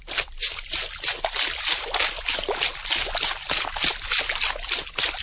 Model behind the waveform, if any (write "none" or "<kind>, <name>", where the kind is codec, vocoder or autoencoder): none